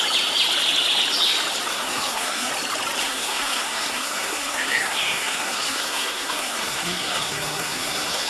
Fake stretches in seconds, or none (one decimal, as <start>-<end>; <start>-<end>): 1.7-2.5; 3.0-8.3